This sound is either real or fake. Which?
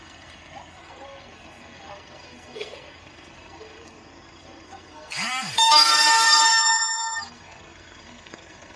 fake